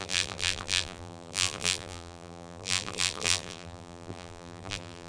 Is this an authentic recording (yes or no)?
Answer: no